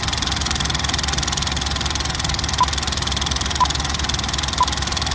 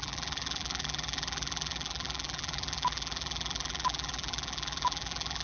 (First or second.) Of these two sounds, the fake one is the second